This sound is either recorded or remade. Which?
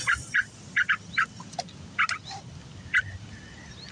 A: recorded